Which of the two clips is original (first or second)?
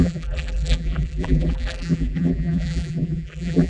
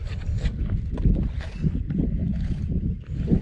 second